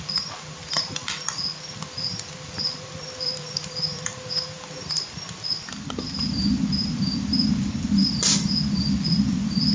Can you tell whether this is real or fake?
real